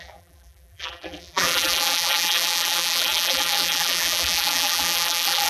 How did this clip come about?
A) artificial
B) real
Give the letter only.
A